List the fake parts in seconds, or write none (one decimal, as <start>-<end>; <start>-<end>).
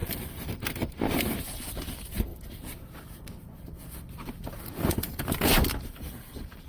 0.0-2.3; 5.8-6.7